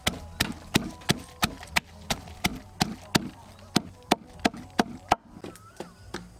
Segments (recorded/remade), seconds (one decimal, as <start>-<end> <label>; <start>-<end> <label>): 0.0-6.4 recorded